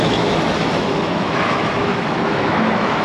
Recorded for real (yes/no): no